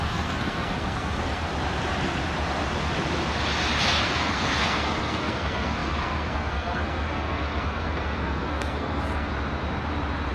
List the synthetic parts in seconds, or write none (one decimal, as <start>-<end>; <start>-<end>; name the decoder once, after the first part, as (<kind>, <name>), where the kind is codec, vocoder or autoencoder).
0.0-1.5 (codec, SNAC); 3.8-9.3

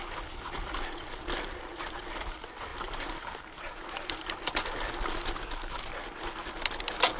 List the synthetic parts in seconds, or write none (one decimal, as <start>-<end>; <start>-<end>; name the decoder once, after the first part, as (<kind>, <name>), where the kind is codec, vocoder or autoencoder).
2.7-4.3 (vocoder, BigVGAN v2)

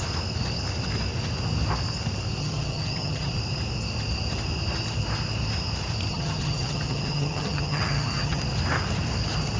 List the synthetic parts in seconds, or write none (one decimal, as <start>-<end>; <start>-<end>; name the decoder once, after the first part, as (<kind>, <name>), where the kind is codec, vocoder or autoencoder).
2.4-3.3 (vocoder, HiFi-GAN); 6.1-8.4